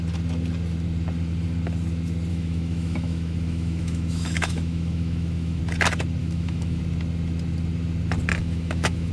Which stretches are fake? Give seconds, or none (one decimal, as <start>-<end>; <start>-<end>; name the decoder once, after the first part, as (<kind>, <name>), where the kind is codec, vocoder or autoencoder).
2.3-5.6 (autoencoder, DAC-VAE); 6.2-6.8; 8.3-9.1